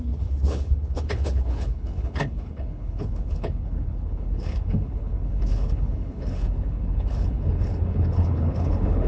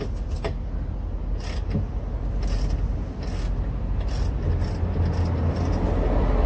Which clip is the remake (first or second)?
first